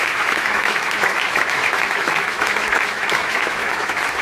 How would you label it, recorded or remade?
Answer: remade